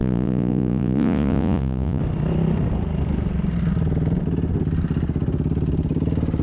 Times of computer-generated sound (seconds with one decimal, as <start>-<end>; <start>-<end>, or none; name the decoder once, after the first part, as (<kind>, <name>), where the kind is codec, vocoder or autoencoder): 0.0-2.0 (vocoder, Vocos)